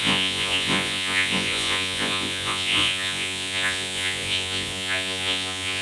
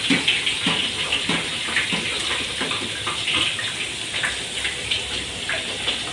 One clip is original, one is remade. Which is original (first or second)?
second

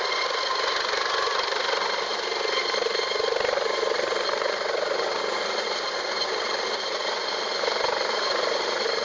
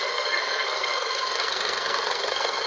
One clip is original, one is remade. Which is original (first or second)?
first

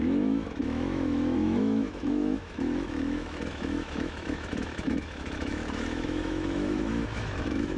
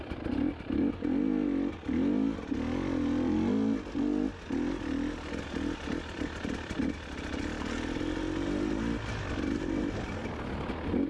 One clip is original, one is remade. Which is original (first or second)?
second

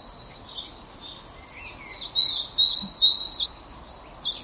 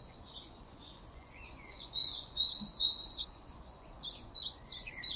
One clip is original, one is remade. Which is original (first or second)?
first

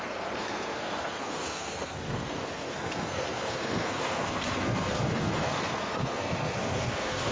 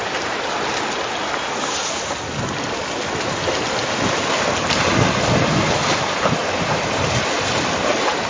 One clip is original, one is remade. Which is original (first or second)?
second